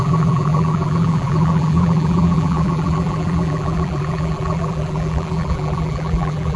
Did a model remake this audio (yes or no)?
yes